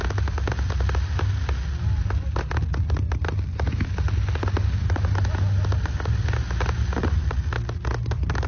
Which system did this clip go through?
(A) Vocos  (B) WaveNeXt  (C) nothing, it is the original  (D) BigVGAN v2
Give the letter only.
C